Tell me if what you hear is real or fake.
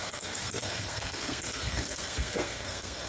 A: fake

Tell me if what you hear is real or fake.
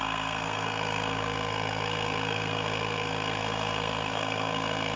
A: fake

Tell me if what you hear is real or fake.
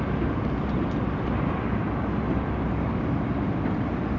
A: real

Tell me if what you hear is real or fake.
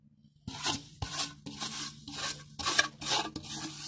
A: real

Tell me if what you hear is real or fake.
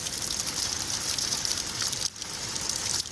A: real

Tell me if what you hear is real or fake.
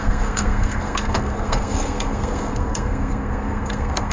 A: fake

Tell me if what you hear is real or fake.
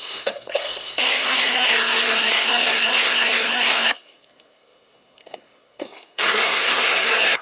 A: fake